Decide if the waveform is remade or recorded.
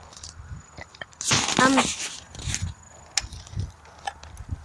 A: recorded